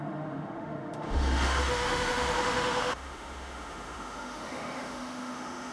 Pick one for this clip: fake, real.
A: fake